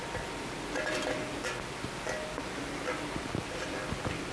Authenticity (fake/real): real